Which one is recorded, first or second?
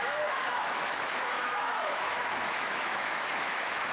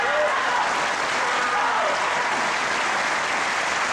second